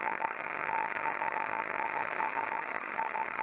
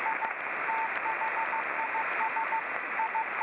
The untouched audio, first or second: second